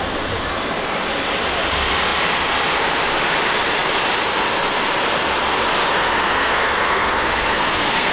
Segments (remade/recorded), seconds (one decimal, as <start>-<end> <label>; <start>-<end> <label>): 0.0-5.9 recorded; 5.9-8.1 remade

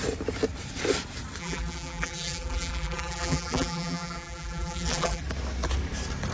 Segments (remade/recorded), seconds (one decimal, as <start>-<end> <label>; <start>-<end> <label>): 0.0-1.4 recorded; 1.4-5.2 remade; 5.2-6.3 recorded

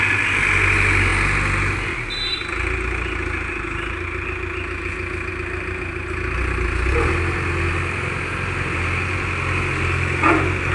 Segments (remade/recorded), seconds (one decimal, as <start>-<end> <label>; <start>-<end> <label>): 0.0-10.7 recorded

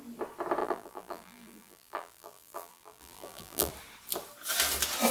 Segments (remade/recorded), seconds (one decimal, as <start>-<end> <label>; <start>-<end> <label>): 0.0-0.6 recorded; 0.6-3.7 remade; 3.7-5.1 recorded

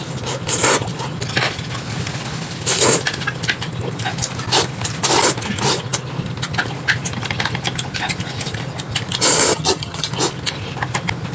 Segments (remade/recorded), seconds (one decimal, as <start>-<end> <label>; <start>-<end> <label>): 0.0-9.5 recorded; 9.5-10.1 remade; 10.1-11.3 recorded

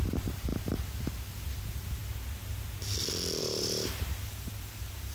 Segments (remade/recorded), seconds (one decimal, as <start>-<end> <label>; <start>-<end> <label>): 0.0-0.5 remade; 0.5-1.3 recorded; 1.3-2.0 remade; 2.0-3.4 recorded; 3.4-5.1 remade